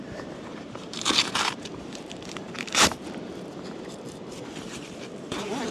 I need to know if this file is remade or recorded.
remade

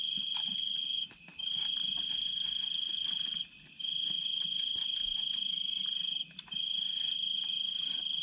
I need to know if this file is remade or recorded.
recorded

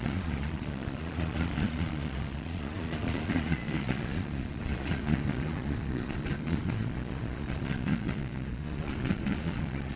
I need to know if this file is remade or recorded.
remade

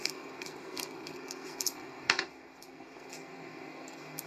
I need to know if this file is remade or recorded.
remade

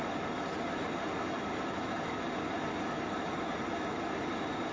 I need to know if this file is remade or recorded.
recorded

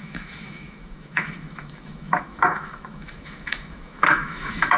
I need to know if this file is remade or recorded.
remade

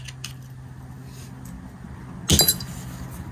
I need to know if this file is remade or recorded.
recorded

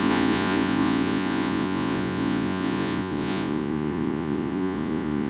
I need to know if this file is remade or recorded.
remade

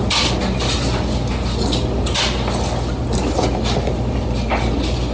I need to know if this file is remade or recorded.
recorded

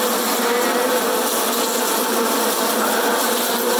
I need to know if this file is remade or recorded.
recorded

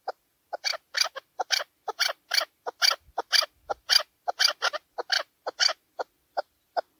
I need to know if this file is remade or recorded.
remade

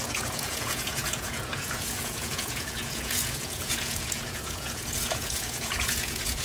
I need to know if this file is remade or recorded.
remade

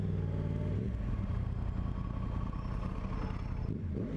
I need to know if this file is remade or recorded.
recorded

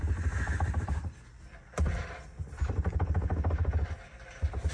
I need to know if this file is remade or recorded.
recorded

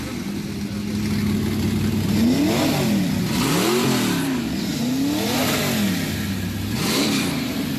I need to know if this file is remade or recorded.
recorded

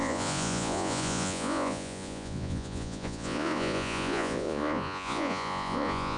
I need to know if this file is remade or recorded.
remade